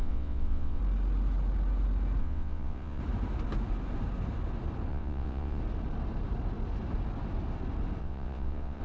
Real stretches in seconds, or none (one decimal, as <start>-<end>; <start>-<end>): 0.8-2.2; 3.0-4.9; 5.6-8.0